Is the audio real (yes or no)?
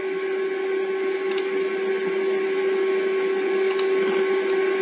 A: yes